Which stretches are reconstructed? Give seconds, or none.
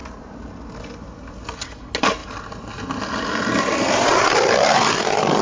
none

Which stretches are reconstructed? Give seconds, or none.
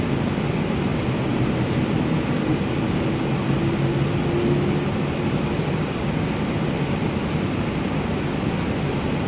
none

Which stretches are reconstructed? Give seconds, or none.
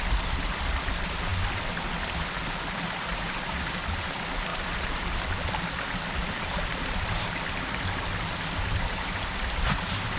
4.5-5.2 (vocoder, BigVGAN v2); 6.2-7.3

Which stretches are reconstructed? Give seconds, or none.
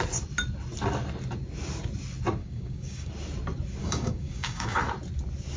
2.4-3.1 (codec, DAC); 3.8-4.8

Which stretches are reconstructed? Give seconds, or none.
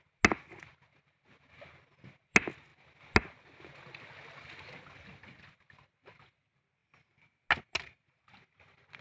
none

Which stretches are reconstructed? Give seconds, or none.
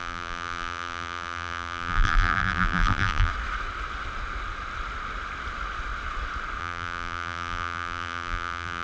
0.0-3.3 (vocoder, BigVGAN v2); 6.6-8.8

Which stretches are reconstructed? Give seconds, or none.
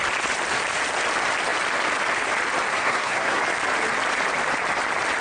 2.7-3.4 (codec, SNAC)